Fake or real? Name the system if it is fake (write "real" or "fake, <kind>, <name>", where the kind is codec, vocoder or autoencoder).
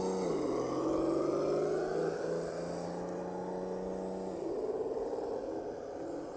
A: real